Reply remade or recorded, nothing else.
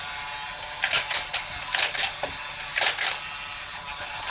recorded